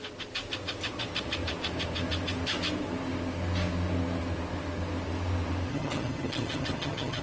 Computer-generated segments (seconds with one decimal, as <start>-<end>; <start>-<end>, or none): 5.7-7.2